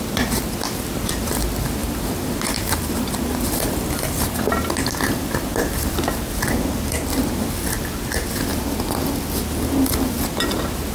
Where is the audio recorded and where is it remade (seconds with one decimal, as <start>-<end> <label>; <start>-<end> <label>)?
0.0-1.8 recorded; 1.8-6.0 remade; 6.0-10.9 recorded